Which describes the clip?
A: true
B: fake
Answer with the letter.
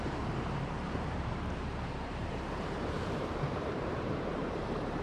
B